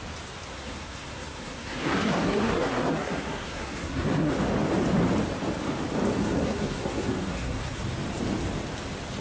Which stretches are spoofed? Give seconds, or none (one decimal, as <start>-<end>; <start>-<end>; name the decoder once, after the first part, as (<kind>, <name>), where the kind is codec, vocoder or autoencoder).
0.5-4.3 (codec, SNAC); 6.2-7.8